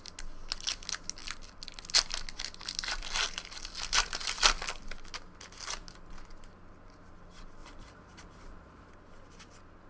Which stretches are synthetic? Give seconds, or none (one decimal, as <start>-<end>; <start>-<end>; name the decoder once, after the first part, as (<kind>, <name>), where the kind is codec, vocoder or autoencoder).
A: 7.6-8.9 (vocoder, BigVGAN v2)